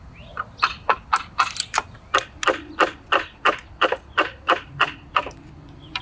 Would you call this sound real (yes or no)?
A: yes